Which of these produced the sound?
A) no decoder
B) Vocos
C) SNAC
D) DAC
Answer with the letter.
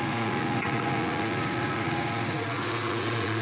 B